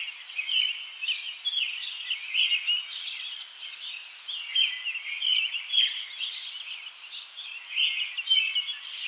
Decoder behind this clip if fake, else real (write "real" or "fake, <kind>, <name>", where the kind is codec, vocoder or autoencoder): real